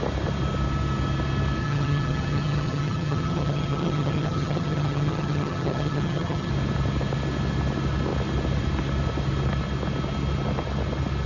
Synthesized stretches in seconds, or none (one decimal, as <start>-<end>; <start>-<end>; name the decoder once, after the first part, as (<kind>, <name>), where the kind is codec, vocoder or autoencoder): 1.6-6.5 (vocoder, HiFi-GAN)